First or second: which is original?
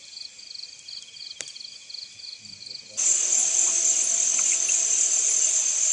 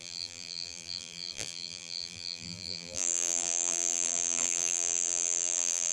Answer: first